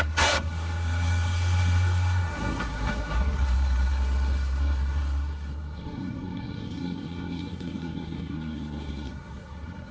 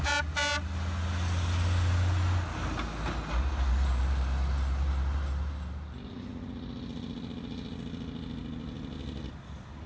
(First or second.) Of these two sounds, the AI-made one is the first